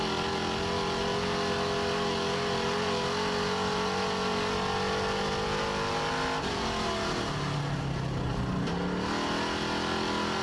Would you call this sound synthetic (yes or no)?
no